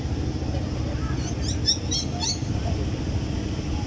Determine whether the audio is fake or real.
real